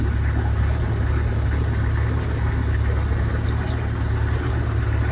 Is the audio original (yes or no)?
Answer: yes